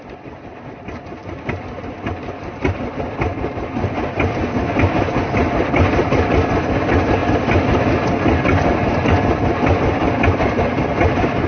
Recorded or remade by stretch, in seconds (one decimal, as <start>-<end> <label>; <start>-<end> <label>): 0.0-11.5 recorded